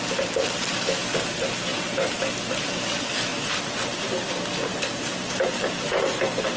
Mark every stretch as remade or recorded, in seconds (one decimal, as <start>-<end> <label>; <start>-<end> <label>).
0.0-1.7 recorded; 1.7-2.2 remade; 2.2-3.3 recorded; 3.3-4.1 remade; 4.1-4.7 recorded; 4.7-5.5 remade; 5.5-6.6 recorded